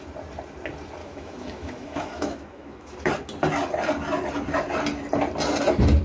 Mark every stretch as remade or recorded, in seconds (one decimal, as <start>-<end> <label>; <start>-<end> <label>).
0.0-1.0 recorded; 1.0-3.1 remade; 3.1-6.0 recorded